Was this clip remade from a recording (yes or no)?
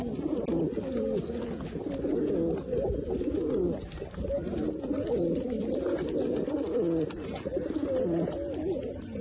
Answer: no